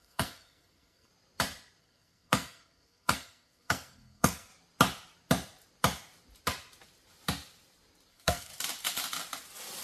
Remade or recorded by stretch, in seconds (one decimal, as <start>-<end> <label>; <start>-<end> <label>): 0.0-1.1 remade; 1.1-1.8 recorded; 1.8-4.5 remade; 4.5-8.1 recorded; 8.1-8.5 remade; 8.5-9.8 recorded